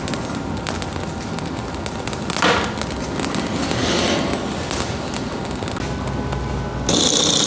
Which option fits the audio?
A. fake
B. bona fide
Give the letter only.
B